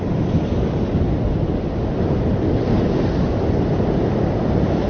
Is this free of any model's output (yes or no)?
yes